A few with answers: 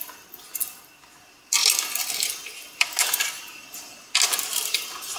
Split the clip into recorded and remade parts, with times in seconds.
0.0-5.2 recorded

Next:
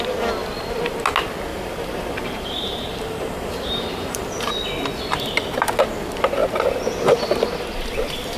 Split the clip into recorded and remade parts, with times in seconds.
0.0-1.5 recorded; 1.5-4.5 remade; 4.5-8.4 recorded

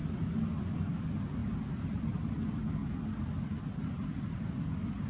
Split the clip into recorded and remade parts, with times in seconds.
0.0-5.1 recorded

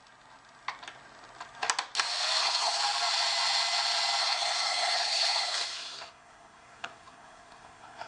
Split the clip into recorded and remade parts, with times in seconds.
0.0-2.4 recorded; 2.4-2.8 remade; 2.8-4.2 recorded; 4.2-8.1 remade